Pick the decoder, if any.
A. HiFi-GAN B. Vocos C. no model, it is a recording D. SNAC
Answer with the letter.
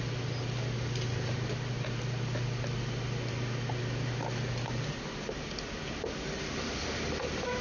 C